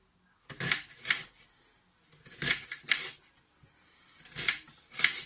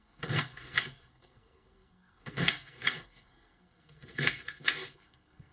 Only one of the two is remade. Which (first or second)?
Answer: second